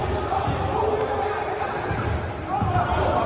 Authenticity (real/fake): real